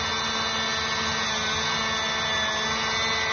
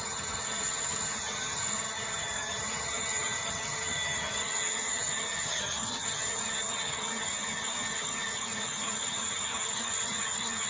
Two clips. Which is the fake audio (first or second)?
second